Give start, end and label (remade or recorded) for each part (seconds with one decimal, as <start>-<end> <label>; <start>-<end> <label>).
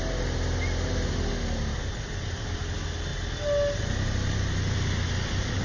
0.0-5.6 recorded